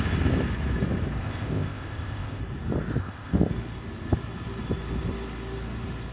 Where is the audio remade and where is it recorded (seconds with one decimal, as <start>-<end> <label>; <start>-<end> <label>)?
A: 0.0-1.2 recorded; 1.2-2.4 remade; 2.4-3.0 recorded; 3.0-3.5 remade; 3.5-6.1 recorded